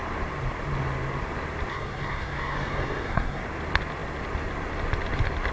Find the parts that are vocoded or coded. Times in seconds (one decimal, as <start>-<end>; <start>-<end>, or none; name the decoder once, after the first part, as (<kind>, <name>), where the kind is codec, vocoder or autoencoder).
1.7-3.4 (codec, SNAC)

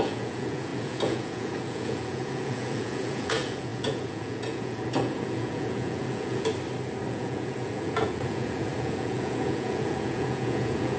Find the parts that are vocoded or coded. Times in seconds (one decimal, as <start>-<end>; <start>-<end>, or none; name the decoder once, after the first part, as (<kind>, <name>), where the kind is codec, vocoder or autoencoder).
0.0-6.5 (vocoder, Vocos); 7.1-11.0

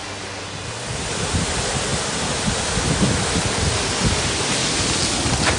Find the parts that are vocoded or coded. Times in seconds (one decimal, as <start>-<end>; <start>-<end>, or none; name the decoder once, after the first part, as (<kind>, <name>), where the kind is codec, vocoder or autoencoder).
none

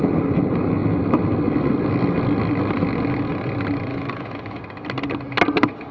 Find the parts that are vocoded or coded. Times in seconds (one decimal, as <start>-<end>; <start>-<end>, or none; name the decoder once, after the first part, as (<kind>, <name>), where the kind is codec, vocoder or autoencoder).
3.9-4.6 (autoencoder, DAC-VAE)

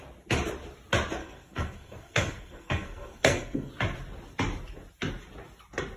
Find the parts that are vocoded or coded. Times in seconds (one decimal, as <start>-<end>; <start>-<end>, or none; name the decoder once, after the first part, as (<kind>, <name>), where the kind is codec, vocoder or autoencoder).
1.2-3.7 (codec, SNAC)

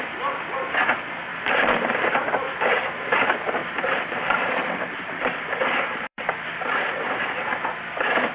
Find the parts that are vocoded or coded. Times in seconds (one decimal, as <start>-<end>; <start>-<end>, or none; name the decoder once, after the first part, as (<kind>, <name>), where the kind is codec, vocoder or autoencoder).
1.3-2.2 (vocoder, BigVGAN v2); 3.6-7.0